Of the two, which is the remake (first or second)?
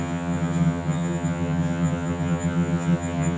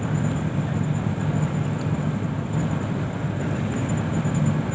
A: first